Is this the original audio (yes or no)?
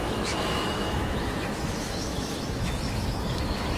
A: no